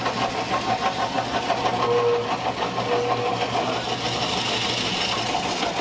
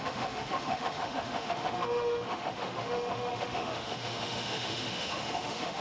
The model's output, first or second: second